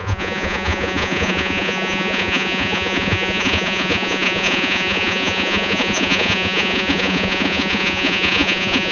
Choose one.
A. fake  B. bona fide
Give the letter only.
A